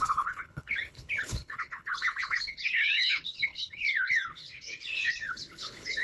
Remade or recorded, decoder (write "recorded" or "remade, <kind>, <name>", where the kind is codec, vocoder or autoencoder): remade, codec, HILCodec